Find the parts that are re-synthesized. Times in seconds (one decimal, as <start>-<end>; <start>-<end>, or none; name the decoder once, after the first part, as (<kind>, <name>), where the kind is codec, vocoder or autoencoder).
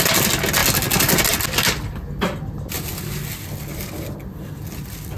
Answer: none